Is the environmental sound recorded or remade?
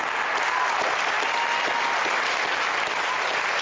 recorded